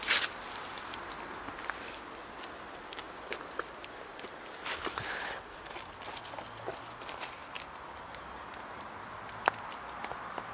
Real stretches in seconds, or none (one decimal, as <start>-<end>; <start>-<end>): 0.0-10.5